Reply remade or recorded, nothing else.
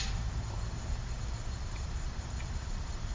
remade